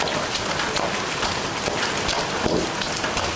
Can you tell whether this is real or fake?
real